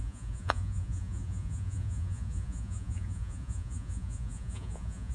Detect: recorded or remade remade